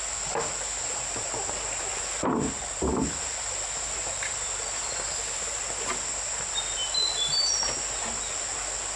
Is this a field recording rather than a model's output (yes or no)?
yes